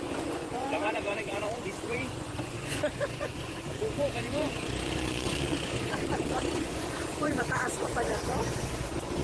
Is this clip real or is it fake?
fake